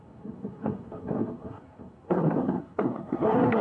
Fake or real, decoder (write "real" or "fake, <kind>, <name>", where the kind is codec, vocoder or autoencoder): fake, codec, SNAC